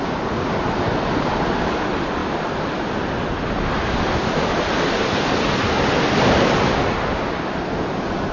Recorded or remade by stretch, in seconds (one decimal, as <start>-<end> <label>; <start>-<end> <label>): 0.0-8.3 recorded